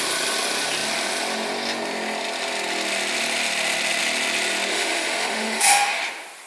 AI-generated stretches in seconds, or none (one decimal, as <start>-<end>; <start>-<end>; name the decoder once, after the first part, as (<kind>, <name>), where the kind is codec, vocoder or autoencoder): 4.7-6.0 (autoencoder, DAC-VAE)